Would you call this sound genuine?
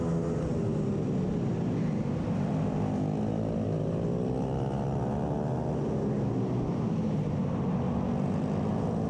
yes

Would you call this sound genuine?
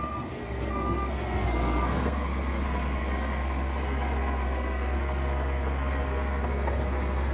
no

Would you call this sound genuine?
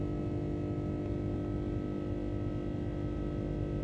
yes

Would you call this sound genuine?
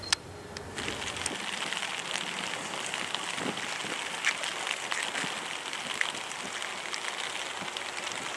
yes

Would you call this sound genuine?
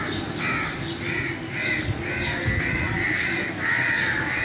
yes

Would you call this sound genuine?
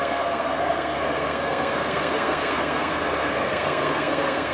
no